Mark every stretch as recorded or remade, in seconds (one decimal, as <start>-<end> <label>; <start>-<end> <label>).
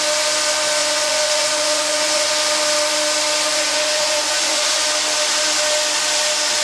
0.0-0.8 recorded; 0.8-2.3 remade; 2.3-3.5 recorded; 3.5-4.8 remade; 4.8-6.6 recorded